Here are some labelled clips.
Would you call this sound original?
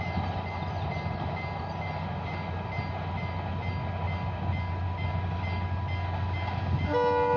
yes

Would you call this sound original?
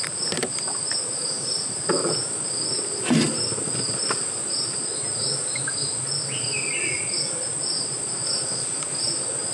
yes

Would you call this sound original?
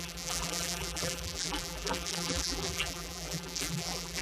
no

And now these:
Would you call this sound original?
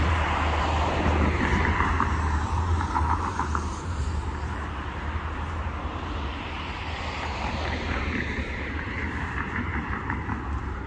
no